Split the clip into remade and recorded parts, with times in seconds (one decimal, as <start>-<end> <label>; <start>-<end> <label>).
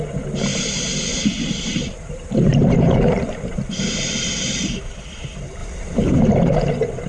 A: 0.0-0.5 recorded; 0.5-4.8 remade; 4.8-5.6 recorded; 5.6-6.2 remade; 6.2-7.1 recorded